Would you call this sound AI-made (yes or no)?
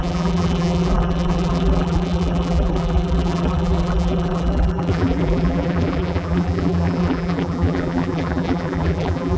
yes